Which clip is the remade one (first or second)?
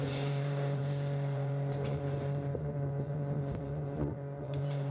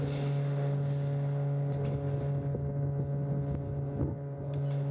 first